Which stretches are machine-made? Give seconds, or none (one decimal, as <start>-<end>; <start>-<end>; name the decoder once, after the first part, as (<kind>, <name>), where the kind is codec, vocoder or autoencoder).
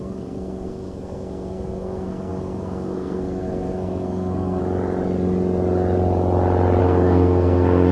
0.0-4.6 (codec, SNAC); 6.8-7.9